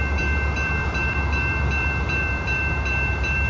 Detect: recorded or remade remade